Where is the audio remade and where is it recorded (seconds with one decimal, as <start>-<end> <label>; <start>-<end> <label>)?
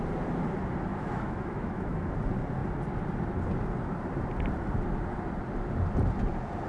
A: 0.0-0.9 recorded; 0.9-2.1 remade; 2.1-6.7 recorded